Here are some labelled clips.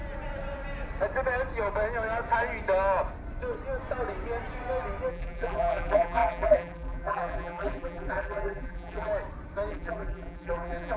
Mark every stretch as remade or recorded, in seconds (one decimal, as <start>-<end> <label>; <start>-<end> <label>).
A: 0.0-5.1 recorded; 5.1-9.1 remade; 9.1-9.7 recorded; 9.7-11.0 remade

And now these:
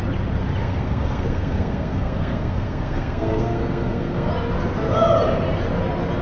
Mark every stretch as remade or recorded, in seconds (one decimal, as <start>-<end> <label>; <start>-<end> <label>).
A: 0.0-0.6 recorded; 0.6-4.3 remade; 4.3-6.2 recorded

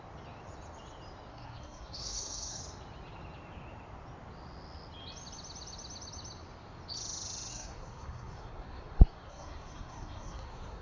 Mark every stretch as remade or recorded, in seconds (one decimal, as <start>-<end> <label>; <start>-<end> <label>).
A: 0.0-1.3 recorded; 1.3-2.6 remade; 2.6-7.5 recorded; 7.5-10.8 remade

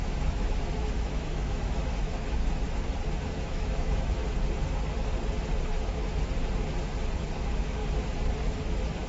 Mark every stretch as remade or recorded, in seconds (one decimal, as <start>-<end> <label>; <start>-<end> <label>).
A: 0.0-2.4 remade; 2.4-3.2 recorded; 3.2-4.2 remade; 4.2-7.2 recorded; 7.2-7.8 remade; 7.8-8.5 recorded; 8.5-9.1 remade

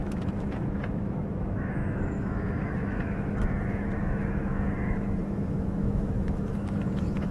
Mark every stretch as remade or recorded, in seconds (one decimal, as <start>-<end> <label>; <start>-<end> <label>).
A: 0.0-7.3 remade

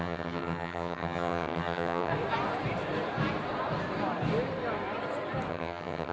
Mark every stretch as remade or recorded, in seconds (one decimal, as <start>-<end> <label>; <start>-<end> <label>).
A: 0.0-2.1 remade; 2.1-5.5 recorded; 5.5-6.1 remade

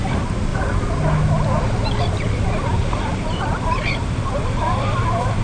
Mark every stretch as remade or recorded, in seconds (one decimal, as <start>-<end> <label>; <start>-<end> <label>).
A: 0.0-0.5 remade; 0.5-2.0 recorded; 2.0-5.4 remade